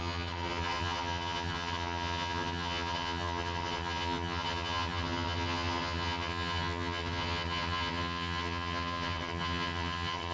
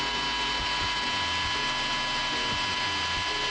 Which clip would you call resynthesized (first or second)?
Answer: first